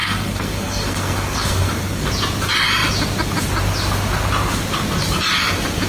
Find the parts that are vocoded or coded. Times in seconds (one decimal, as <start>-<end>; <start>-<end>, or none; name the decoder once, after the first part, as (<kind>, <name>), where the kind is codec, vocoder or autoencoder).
0.0-2.1 (codec, SNAC)